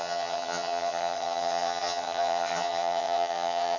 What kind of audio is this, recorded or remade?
remade